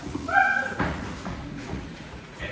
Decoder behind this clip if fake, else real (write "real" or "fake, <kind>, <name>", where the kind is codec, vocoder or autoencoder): fake, vocoder, Vocos